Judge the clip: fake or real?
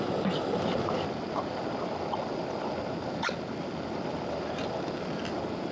real